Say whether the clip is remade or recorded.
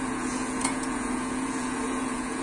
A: remade